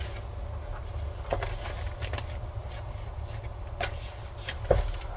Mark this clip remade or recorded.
recorded